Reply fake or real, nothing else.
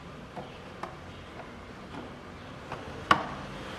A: real